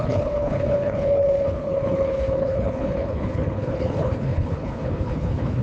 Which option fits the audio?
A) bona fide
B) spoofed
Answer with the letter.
B